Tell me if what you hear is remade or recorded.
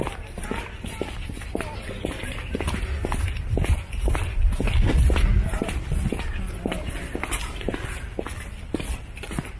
recorded